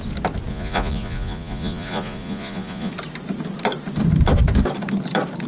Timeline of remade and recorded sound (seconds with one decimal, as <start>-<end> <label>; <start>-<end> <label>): 0.0-0.5 recorded; 0.5-2.9 remade; 2.9-5.5 recorded